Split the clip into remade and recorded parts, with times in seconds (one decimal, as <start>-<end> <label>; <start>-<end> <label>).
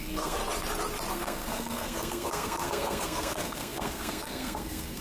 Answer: 0.0-0.4 remade; 0.4-1.1 recorded; 1.1-5.0 remade